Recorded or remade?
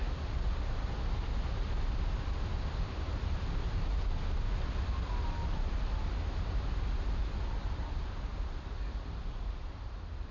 recorded